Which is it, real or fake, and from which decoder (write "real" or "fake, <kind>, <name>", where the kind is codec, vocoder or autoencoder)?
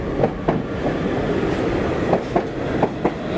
real